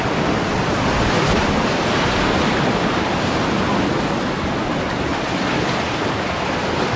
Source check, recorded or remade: recorded